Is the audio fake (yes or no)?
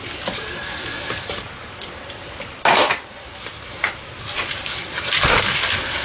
no